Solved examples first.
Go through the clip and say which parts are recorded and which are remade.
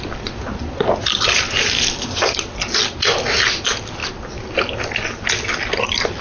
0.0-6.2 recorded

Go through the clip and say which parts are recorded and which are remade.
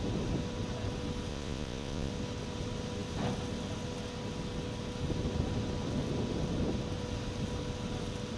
0.0-1.3 recorded; 1.3-2.1 remade; 2.1-8.4 recorded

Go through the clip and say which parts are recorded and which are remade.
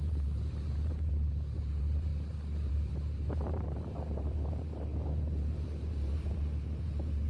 0.0-2.1 remade; 2.1-2.7 recorded; 2.7-7.3 remade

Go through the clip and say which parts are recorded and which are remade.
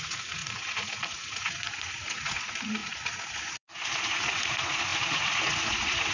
0.0-6.1 remade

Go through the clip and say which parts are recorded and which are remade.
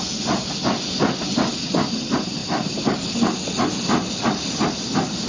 0.0-5.3 recorded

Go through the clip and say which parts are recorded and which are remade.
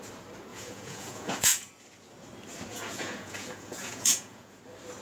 0.0-0.5 recorded; 0.5-1.7 remade; 1.7-2.7 recorded; 2.7-4.6 remade; 4.6-5.0 recorded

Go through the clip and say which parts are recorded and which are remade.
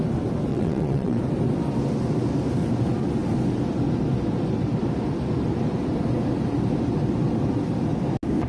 0.0-0.5 recorded; 0.5-1.2 remade; 1.2-8.5 recorded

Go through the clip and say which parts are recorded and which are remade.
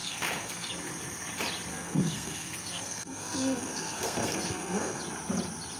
0.0-0.7 remade; 0.7-1.7 recorded; 1.7-5.0 remade; 5.0-5.8 recorded